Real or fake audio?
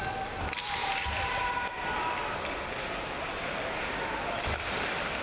real